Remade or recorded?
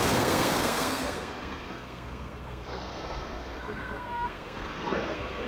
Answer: remade